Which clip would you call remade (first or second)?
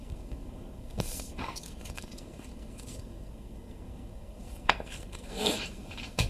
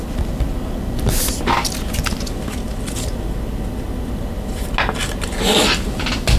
first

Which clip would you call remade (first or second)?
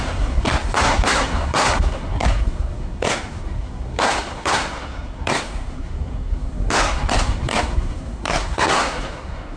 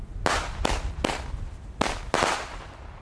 first